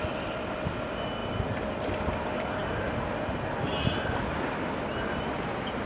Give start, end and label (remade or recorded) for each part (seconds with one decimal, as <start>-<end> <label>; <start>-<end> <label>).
0.0-2.6 recorded; 2.6-3.5 remade; 3.5-5.9 recorded